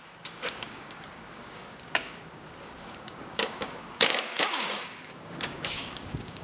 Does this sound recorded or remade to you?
remade